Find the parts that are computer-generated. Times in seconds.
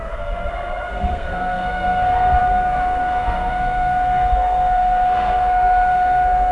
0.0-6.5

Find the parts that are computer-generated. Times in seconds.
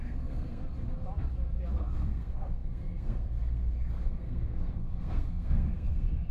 0.0-0.6; 1.7-6.3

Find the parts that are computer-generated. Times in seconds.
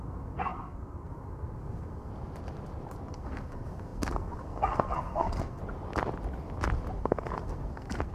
0.0-2.1; 3.1-5.6; 7.0-8.1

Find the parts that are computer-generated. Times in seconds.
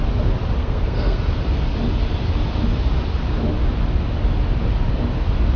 0.6-1.2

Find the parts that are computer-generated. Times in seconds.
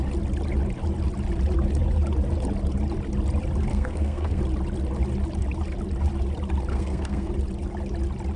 3.7-4.4; 6.7-7.3